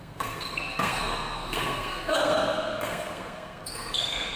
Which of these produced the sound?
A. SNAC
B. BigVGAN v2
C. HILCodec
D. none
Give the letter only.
A